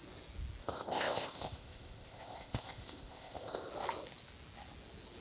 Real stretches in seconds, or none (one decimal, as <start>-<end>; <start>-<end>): 0.0-0.6; 3.7-5.2